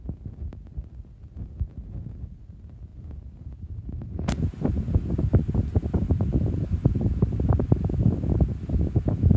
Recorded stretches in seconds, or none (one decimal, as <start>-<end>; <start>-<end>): 0.0-9.4